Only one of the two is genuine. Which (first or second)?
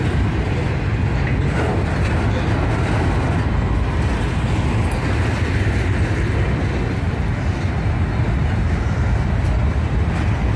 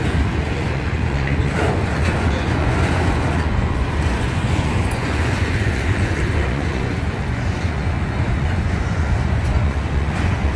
first